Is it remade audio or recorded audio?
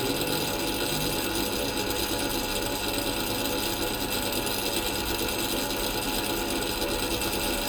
recorded